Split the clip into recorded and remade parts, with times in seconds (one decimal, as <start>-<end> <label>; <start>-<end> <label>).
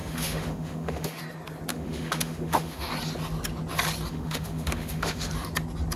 0.0-1.2 remade; 1.2-1.7 recorded; 1.7-2.9 remade; 2.9-4.1 recorded; 4.1-5.3 remade; 5.3-6.0 recorded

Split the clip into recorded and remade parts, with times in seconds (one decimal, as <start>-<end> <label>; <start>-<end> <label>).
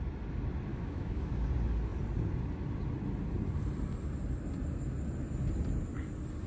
0.0-0.7 recorded; 0.7-1.3 remade; 1.3-6.5 recorded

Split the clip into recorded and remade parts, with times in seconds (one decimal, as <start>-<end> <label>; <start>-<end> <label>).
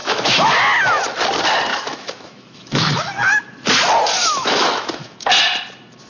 0.0-0.5 remade; 0.5-1.7 recorded; 1.7-3.1 remade; 3.1-4.2 recorded; 4.2-5.3 remade; 5.3-6.1 recorded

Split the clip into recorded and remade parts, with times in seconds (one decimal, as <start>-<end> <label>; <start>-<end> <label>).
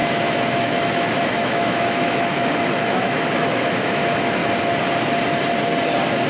0.0-4.4 remade; 4.4-6.3 recorded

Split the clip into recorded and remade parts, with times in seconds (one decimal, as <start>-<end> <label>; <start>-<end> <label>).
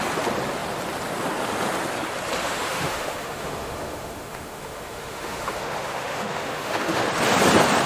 0.0-2.4 recorded; 2.4-7.1 remade; 7.1-7.9 recorded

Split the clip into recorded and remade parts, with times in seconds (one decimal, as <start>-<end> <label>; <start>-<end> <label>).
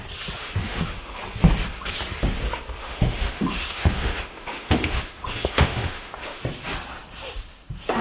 0.0-0.4 recorded; 0.4-1.2 remade; 1.2-2.8 recorded; 2.8-6.4 remade; 6.4-8.0 recorded